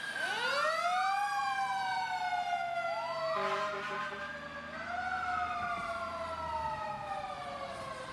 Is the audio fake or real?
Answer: real